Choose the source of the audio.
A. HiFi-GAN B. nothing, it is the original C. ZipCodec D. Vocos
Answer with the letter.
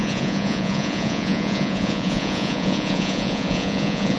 D